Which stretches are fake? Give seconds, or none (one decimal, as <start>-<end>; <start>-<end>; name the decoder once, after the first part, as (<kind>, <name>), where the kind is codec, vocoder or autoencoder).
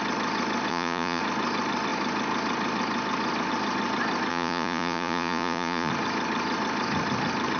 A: 0.7-1.2 (vocoder, Vocos); 4.3-5.9